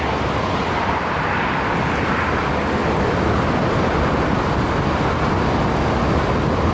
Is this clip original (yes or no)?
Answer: yes